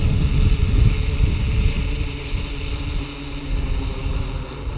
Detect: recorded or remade recorded